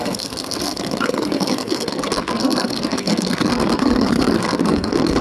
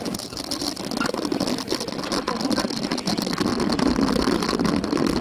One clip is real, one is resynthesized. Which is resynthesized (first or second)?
first